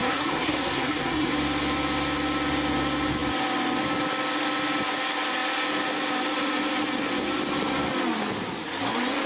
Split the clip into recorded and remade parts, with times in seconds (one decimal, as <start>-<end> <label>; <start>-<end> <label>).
0.0-1.3 remade; 1.3-9.3 recorded